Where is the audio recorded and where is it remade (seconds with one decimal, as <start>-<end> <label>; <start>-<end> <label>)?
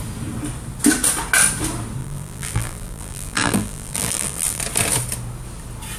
0.0-2.0 recorded; 2.0-4.6 remade; 4.6-6.0 recorded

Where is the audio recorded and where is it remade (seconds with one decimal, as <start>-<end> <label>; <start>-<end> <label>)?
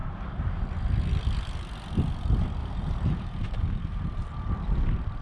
0.0-0.6 remade; 0.6-2.6 recorded; 2.6-4.3 remade; 4.3-5.2 recorded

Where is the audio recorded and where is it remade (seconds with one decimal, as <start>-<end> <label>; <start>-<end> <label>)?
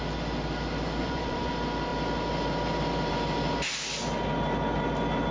0.0-1.0 recorded; 1.0-1.5 remade; 1.5-5.3 recorded